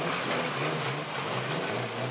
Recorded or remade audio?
recorded